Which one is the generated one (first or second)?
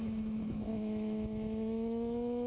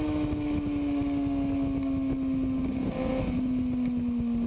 first